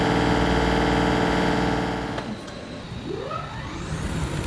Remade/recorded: recorded